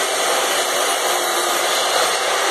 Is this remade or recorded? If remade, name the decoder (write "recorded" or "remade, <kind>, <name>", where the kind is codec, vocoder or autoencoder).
recorded